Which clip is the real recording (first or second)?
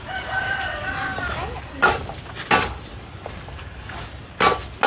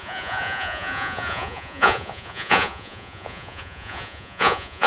first